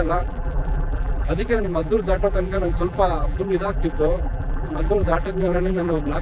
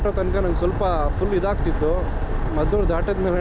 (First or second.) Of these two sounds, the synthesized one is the first